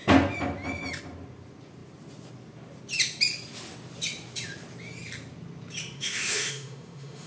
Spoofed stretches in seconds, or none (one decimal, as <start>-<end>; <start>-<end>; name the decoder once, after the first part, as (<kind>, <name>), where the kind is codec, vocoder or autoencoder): 5.8-7.3 (autoencoder, DAC-VAE)